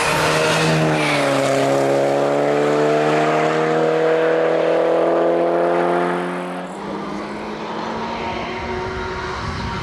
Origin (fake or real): real